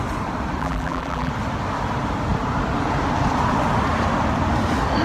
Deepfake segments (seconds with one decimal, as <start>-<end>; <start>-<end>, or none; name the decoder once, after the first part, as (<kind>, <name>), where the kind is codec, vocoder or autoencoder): 0.6-1.3 (vocoder, BigVGAN v2)